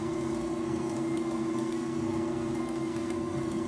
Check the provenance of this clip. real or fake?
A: fake